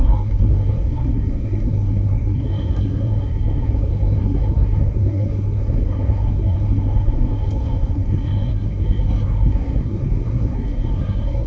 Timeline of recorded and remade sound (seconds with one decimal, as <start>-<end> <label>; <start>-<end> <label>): 0.0-11.5 remade